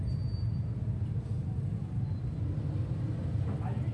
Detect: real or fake real